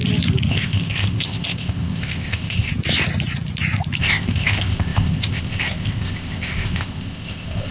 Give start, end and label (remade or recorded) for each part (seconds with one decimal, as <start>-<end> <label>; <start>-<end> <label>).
0.0-0.5 recorded; 0.5-2.7 remade; 2.7-4.0 recorded; 4.0-7.7 remade